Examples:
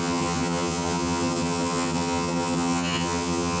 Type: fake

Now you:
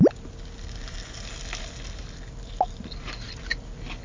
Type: real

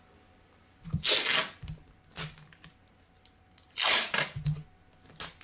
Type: real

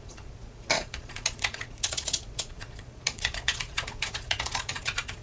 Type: fake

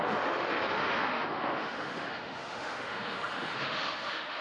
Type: fake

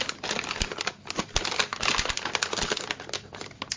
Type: real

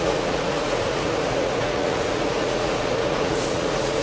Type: fake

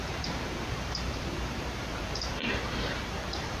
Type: fake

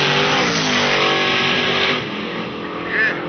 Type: real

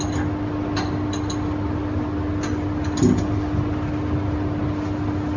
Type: real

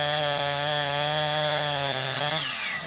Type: fake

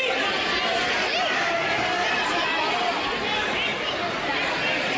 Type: real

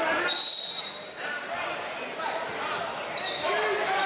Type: real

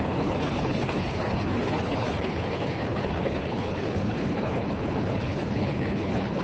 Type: fake